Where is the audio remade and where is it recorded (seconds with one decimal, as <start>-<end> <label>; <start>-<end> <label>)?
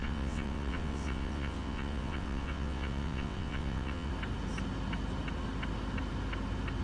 0.0-4.1 remade; 4.1-6.8 recorded